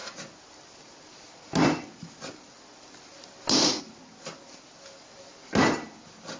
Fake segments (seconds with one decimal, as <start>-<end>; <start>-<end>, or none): none